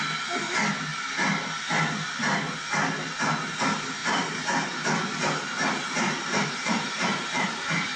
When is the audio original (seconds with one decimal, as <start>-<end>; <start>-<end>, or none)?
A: 0.0-4.0; 4.7-5.5